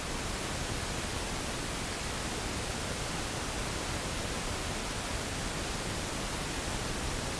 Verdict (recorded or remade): recorded